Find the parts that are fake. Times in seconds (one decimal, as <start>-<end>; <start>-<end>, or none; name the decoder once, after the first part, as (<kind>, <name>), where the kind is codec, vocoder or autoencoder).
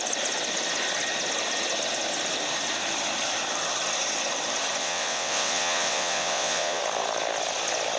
4.8-6.8 (vocoder, WaveNeXt)